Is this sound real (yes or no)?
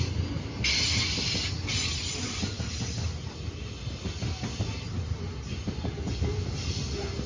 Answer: yes